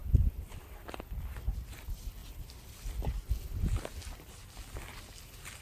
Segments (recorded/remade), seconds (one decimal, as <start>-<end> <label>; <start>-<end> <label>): 0.0-5.6 recorded